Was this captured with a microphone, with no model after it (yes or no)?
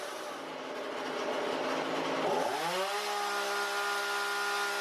yes